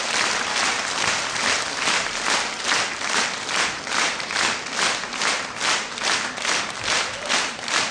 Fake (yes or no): no